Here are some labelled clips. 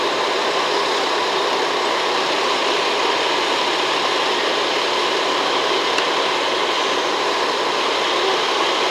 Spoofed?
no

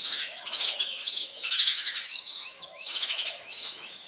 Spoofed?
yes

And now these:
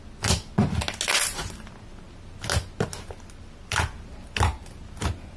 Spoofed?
no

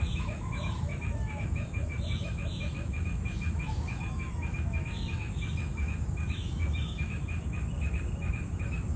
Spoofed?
yes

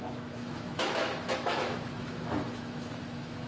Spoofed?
yes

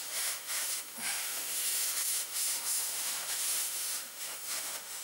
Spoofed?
yes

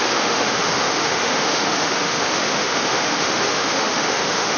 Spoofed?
yes